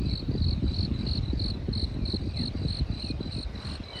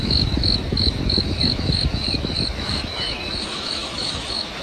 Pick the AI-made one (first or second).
second